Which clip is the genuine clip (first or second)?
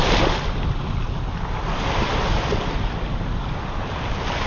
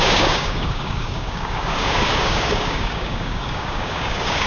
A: first